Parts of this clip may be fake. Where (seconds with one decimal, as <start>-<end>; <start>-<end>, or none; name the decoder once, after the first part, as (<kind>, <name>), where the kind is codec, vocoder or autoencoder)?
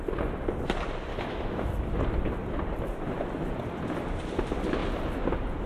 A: 1.1-1.7 (autoencoder, DAC-VAE)